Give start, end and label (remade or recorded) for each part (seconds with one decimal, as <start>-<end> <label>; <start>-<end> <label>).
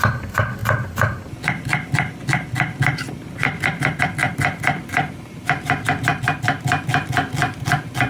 0.0-8.1 recorded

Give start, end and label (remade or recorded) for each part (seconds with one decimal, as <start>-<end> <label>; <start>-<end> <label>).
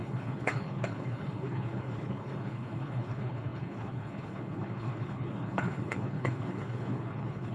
0.0-7.5 remade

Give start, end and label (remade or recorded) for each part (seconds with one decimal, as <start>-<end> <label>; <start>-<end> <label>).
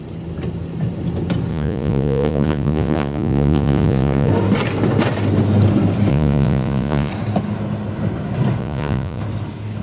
0.0-1.5 recorded; 1.5-4.3 remade; 4.3-6.1 recorded; 6.1-7.1 remade; 7.1-8.6 recorded; 8.6-9.2 remade; 9.2-9.8 recorded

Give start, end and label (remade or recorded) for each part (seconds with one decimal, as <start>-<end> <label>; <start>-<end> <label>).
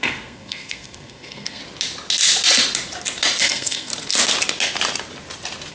0.0-1.6 remade; 1.6-3.4 recorded; 3.4-3.9 remade; 3.9-5.7 recorded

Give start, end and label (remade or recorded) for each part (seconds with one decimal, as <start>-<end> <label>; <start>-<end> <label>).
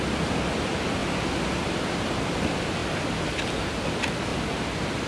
0.0-5.1 recorded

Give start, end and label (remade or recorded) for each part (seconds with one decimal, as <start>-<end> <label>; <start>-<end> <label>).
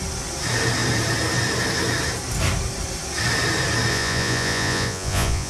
0.0-3.9 recorded; 3.9-5.5 remade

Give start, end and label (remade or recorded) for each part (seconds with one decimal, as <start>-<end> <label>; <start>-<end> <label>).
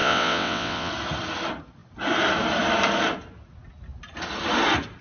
0.0-0.9 remade; 0.9-5.0 recorded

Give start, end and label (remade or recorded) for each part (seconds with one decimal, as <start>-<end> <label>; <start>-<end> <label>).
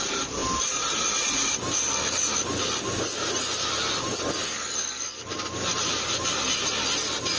0.0-7.4 recorded